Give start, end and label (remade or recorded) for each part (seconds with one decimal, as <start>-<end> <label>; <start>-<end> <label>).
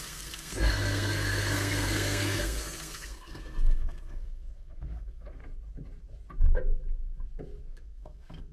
0.0-5.4 remade; 5.4-7.7 recorded; 7.7-8.5 remade